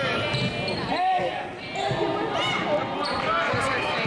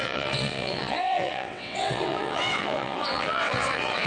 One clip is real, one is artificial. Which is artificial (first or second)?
second